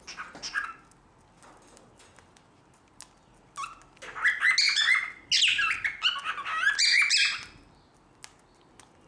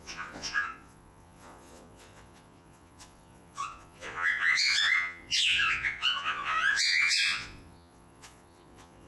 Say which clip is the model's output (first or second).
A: second